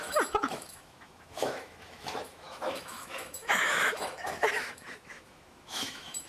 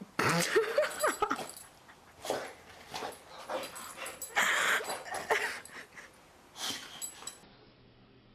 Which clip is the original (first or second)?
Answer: second